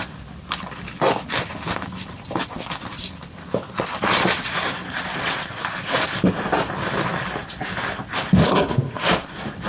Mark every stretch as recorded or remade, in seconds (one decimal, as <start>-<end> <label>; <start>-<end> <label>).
0.0-8.4 recorded; 8.4-9.0 remade; 9.0-9.7 recorded